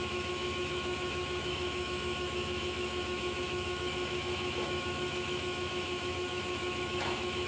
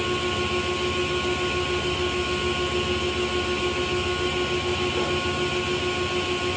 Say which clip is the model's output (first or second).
first